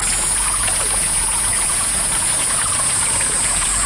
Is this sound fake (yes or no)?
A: yes